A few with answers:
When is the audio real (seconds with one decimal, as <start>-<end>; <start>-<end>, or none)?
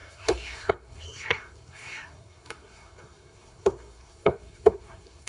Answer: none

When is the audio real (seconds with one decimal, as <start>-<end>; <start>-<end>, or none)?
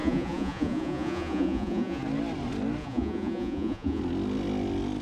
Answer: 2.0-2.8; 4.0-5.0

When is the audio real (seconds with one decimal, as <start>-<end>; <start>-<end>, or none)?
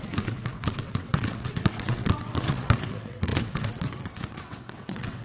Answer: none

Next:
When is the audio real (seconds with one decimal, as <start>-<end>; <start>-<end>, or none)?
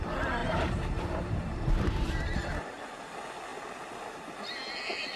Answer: 0.0-0.4; 2.1-5.2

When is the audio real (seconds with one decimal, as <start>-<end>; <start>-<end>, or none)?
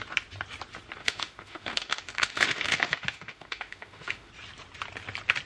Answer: 0.0-1.0; 4.3-5.5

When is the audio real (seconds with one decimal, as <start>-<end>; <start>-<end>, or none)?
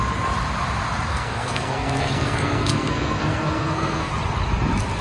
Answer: 0.0-1.1; 4.1-5.0